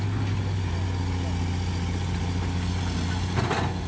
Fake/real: real